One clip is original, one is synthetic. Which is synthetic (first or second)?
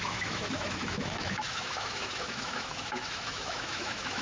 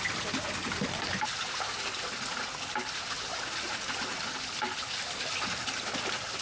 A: first